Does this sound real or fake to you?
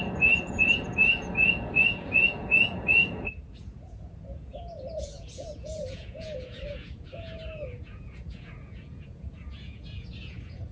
fake